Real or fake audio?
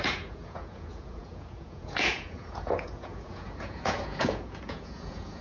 fake